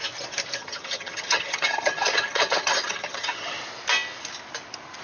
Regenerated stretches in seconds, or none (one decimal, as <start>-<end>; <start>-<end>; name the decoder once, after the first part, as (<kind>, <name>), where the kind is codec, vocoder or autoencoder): 0.6-3.6 (vocoder, HiFi-GAN)